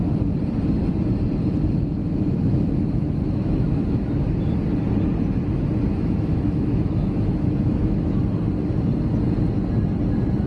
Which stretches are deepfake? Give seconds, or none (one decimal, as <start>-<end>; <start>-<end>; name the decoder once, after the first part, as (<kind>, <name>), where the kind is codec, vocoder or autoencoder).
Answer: 2.0-4.1 (autoencoder, DAC-VAE); 5.9-8.2

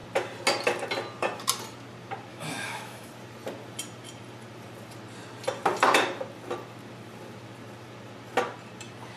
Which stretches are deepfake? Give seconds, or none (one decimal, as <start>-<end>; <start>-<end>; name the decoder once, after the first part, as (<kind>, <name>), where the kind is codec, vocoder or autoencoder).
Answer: 2.3-3.1 (autoencoder, DAC-VAE)